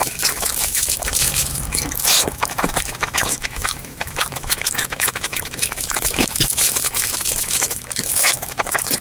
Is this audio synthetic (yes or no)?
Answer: yes